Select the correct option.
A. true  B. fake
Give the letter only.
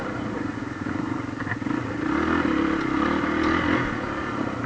A